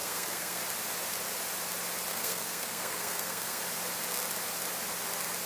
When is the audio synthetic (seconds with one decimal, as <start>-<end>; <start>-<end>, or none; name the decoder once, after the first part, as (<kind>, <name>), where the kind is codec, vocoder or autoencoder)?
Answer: 0.0-0.6 (codec, SNAC); 2.1-3.6